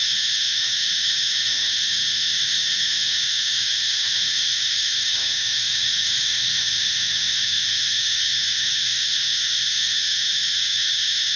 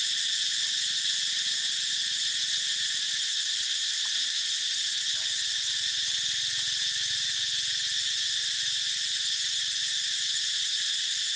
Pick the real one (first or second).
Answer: second